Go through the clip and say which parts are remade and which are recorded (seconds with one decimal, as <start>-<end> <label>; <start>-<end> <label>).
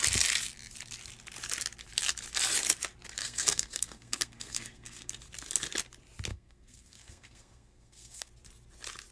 0.0-3.2 recorded; 3.2-5.2 remade; 5.2-6.3 recorded; 6.3-8.3 remade; 8.3-9.1 recorded